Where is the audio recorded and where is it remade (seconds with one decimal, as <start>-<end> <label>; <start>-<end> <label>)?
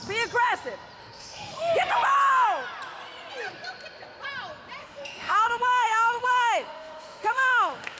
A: 0.0-1.0 recorded; 1.0-1.7 remade; 1.7-4.8 recorded; 4.8-8.0 remade